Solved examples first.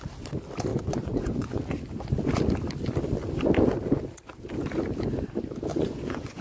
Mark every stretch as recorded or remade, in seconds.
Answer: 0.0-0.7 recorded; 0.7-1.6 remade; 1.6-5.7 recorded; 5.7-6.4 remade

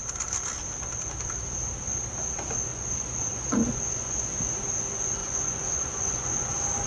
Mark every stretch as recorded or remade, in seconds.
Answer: 0.0-2.7 recorded; 2.7-4.3 remade; 4.3-5.2 recorded; 5.2-6.4 remade; 6.4-6.9 recorded

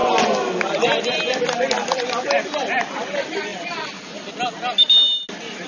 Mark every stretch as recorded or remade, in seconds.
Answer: 0.0-5.7 recorded

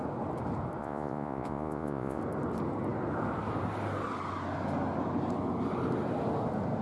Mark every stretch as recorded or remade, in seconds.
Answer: 0.0-0.8 recorded; 0.8-2.2 remade; 2.2-6.8 recorded

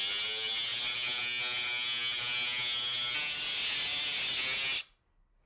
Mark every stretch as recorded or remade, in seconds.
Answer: 0.0-5.5 recorded

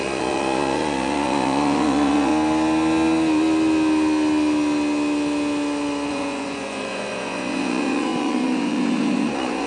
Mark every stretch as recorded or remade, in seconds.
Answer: 0.0-2.3 remade; 2.3-6.1 recorded; 6.1-9.7 remade

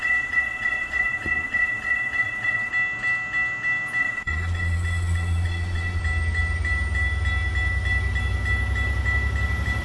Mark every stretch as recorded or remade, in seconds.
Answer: 0.0-2.7 remade; 2.7-4.0 recorded; 4.0-6.0 remade; 6.0-9.8 recorded

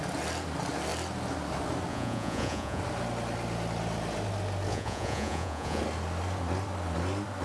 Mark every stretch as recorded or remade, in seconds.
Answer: 0.0-1.9 recorded; 1.9-2.8 remade; 2.8-4.7 recorded; 4.7-5.8 remade; 5.8-7.4 recorded